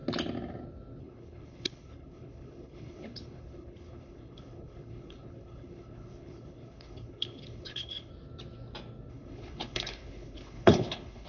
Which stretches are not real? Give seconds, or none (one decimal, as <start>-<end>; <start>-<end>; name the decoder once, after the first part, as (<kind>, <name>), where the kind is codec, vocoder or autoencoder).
1.0-8.1 (codec, HILCodec); 9.1-11.3